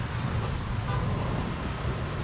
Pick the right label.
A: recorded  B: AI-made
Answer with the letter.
A